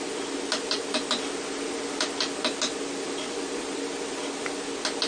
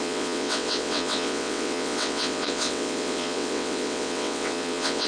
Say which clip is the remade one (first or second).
second